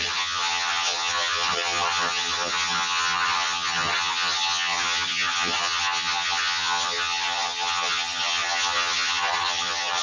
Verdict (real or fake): fake